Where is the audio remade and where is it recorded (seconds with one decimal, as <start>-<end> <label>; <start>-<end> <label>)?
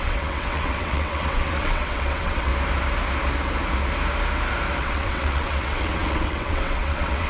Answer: 0.0-2.5 remade; 2.5-4.8 recorded; 4.8-7.3 remade